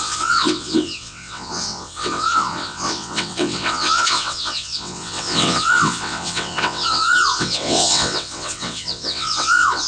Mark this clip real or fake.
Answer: fake